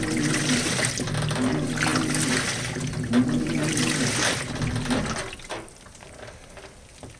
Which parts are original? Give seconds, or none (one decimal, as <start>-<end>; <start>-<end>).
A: 0.0-7.2